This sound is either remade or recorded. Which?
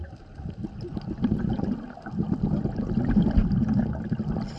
recorded